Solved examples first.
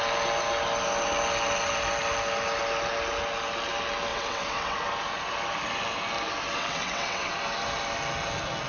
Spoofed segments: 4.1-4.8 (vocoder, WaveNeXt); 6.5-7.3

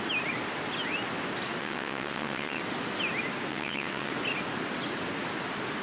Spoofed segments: 1.6-2.6 (vocoder, WaveNeXt); 3.5-4.1

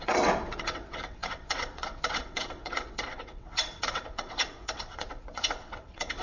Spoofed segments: 0.0-6.2 (vocoder, WaveNeXt)

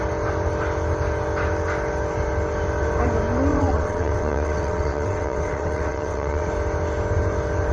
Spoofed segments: 3.5-6.5 (vocoder, WaveNeXt)

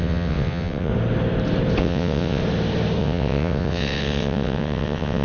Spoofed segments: 0.0-0.9 (vocoder, WaveNeXt); 1.8-2.4; 3.0-5.2